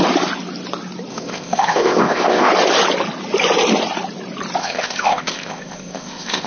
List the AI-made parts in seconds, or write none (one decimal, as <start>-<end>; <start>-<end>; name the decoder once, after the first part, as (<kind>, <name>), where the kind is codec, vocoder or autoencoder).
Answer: 1.1-2.5 (codec, ZipCodec); 4.6-6.5